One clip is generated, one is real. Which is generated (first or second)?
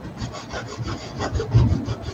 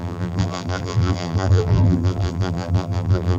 second